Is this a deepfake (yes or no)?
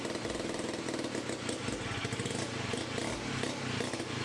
no